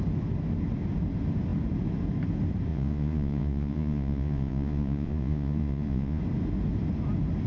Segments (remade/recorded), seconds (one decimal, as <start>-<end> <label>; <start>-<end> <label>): 0.0-2.7 recorded; 2.7-6.2 remade; 6.2-7.5 recorded